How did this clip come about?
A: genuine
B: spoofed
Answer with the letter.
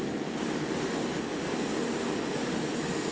A